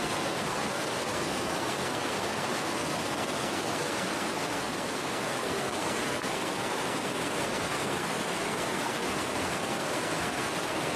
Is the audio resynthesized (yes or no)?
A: yes